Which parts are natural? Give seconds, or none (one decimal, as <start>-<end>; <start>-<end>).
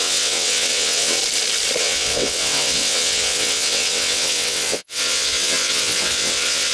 1.2-1.8